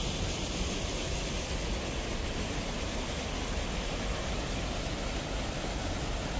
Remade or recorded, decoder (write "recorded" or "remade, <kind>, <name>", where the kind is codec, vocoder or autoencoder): recorded